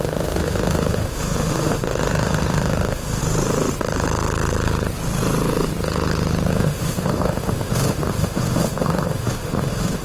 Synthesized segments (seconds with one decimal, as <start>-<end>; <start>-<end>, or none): 0.0-3.2; 6.5-10.0